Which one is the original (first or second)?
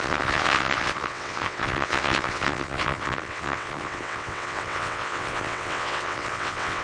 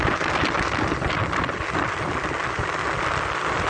second